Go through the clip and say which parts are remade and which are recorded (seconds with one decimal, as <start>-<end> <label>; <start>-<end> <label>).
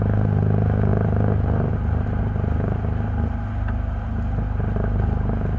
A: 0.0-5.6 recorded